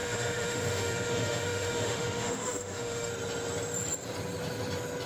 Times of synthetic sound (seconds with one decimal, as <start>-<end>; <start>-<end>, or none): 0.0-3.1